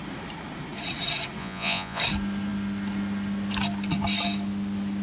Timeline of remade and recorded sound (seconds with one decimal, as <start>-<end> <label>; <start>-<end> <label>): 0.0-1.4 recorded; 1.4-2.0 remade; 2.0-5.0 recorded